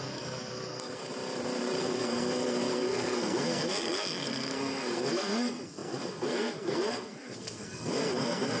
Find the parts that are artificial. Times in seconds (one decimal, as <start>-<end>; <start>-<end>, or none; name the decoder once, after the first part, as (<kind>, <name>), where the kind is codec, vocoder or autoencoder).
0.0-1.0 (codec, SNAC); 1.8-8.6